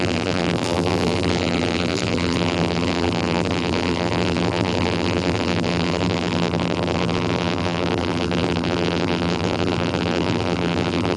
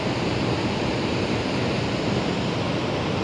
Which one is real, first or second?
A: second